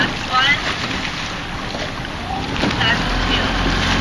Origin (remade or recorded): recorded